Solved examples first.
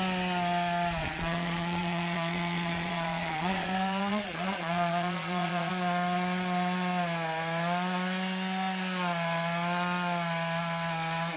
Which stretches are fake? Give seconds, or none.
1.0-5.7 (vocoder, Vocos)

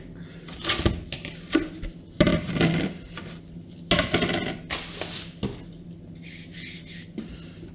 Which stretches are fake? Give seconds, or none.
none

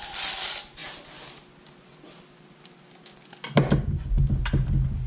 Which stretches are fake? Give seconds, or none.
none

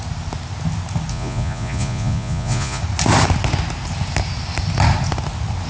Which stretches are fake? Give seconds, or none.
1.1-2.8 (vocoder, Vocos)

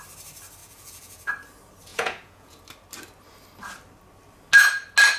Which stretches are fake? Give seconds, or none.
0.6-1.3 (vocoder, Vocos); 1.9-2.6